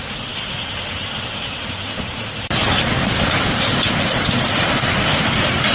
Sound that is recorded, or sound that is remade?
recorded